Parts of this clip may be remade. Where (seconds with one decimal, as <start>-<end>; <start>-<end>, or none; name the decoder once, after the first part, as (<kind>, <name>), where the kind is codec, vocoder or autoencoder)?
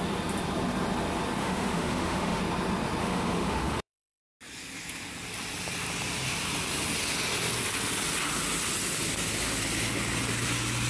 1.4-2.4 (autoencoder, DAC-VAE); 3.0-4.2